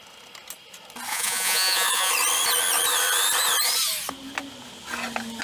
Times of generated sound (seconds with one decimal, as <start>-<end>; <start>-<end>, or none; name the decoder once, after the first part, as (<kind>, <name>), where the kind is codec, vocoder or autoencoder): 1.1-2.1 (vocoder, Vocos)